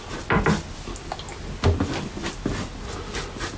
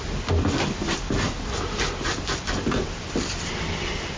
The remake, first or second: second